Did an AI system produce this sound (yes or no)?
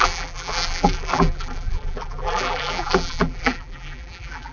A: yes